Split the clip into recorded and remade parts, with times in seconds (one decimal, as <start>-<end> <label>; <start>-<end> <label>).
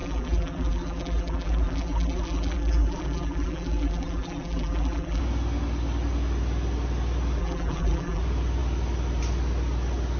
0.0-5.2 remade; 5.2-7.4 recorded; 7.4-8.2 remade; 8.2-10.2 recorded